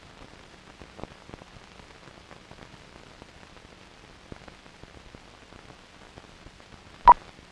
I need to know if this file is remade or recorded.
recorded